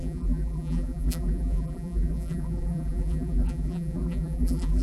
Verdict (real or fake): fake